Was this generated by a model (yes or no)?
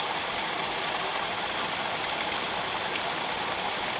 yes